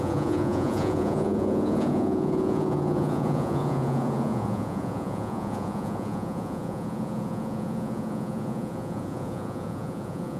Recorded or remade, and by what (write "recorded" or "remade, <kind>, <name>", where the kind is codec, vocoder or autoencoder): remade, vocoder, Vocos